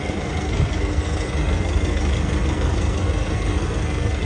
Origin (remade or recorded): remade